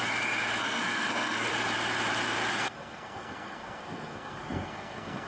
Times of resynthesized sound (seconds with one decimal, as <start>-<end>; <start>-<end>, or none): 0.6-1.5; 2.5-5.3